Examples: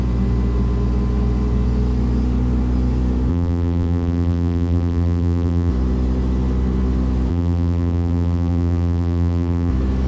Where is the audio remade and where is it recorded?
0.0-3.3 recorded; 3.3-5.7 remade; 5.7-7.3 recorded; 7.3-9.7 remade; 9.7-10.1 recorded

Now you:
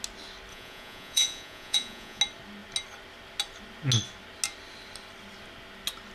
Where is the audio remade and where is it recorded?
0.0-0.5 recorded; 0.5-2.2 remade; 2.2-6.1 recorded

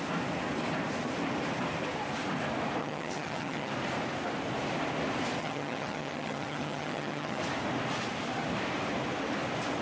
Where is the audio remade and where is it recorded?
0.0-2.8 recorded; 2.8-3.7 remade; 3.7-5.4 recorded; 5.4-7.4 remade; 7.4-9.8 recorded

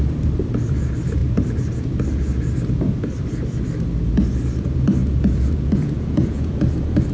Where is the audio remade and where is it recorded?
0.0-5.0 recorded; 5.0-6.6 remade; 6.6-7.1 recorded